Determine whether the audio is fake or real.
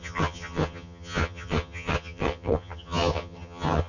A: fake